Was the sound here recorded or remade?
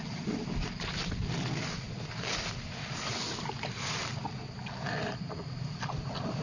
recorded